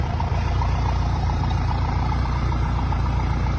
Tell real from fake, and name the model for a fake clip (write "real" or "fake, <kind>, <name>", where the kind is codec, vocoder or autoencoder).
fake, vocoder, BigVGAN v2